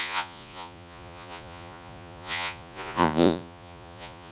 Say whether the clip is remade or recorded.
remade